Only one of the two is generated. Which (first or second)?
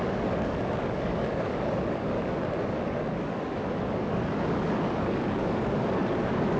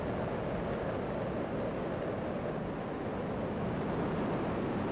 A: first